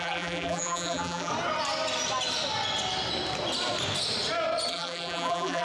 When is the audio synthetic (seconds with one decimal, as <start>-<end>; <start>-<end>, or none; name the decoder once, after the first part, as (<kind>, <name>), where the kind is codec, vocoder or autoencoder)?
0.0-1.3 (vocoder, BigVGAN v2); 4.7-5.6